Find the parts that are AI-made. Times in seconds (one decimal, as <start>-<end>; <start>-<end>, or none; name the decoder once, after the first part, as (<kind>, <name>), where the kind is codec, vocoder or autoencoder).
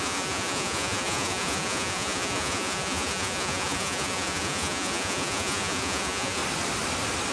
0.0-6.4 (vocoder, Vocos)